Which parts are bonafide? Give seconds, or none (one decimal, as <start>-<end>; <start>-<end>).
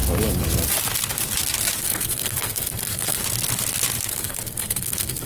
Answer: 0.0-1.8; 3.2-4.1